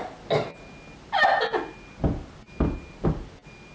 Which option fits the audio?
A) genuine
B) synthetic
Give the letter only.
A